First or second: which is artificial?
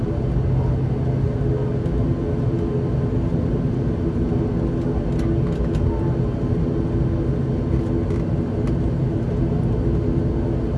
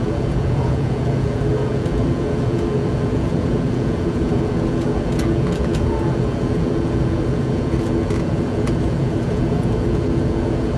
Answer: second